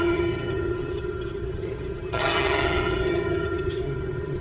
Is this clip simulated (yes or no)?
yes